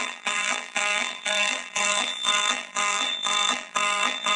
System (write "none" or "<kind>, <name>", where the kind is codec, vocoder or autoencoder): vocoder, BigVGAN v2